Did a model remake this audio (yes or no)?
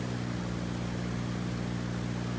no